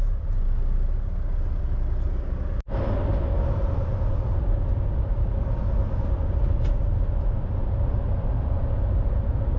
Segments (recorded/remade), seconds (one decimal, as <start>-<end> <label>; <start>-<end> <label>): 0.0-9.6 recorded